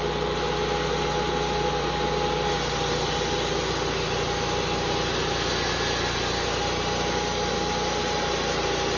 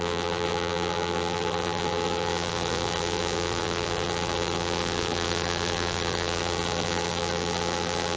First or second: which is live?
first